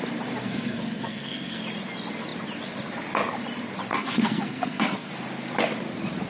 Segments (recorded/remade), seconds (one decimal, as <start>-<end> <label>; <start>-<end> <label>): 0.0-0.4 recorded; 0.4-1.6 remade; 1.6-3.9 recorded; 3.9-5.1 remade; 5.1-6.3 recorded